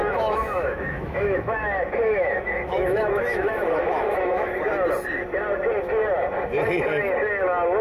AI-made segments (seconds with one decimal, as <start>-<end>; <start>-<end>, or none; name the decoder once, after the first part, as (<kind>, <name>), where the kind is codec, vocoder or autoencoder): 0.0-4.6 (autoencoder, DAC-VAE)